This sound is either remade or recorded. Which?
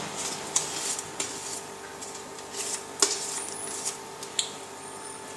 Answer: recorded